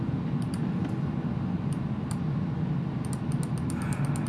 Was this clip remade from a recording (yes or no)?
no